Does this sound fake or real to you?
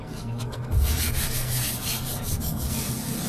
fake